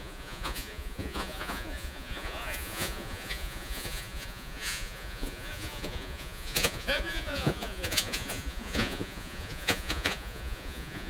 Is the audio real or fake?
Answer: fake